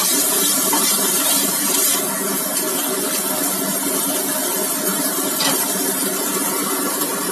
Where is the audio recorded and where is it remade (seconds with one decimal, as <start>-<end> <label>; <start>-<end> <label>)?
0.0-1.6 remade; 1.6-4.9 recorded; 4.9-5.5 remade; 5.5-7.3 recorded